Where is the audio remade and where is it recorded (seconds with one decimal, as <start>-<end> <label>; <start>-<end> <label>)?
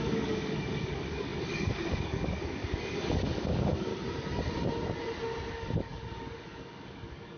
0.0-3.9 remade; 3.9-5.5 recorded; 5.5-7.4 remade